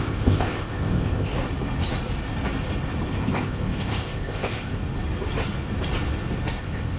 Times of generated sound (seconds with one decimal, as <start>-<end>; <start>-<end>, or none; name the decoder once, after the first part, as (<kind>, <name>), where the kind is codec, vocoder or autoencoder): 0.0-1.3 (codec, ZipCodec); 3.1-4.8; 6.6-7.0